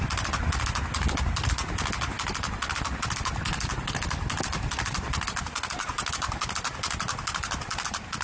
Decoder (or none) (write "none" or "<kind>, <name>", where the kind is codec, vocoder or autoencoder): none